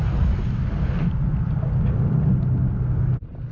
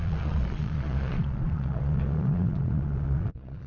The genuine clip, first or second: first